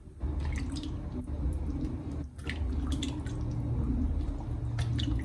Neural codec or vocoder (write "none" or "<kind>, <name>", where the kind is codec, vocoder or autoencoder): none